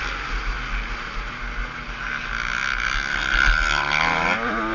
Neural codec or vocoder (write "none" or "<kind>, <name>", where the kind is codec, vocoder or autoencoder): none